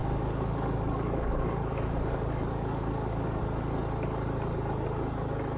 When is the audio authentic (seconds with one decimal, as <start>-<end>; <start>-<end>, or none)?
3.4-5.6